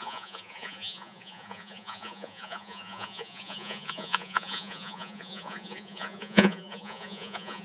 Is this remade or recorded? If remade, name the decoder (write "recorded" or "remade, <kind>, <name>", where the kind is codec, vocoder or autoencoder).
remade, vocoder, Vocos